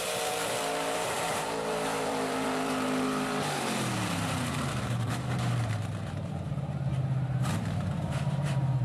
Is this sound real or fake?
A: fake